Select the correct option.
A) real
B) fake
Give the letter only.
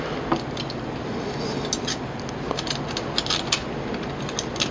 A